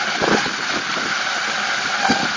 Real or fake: real